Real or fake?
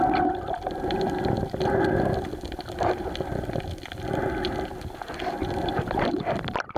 real